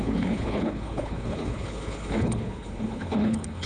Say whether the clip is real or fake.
fake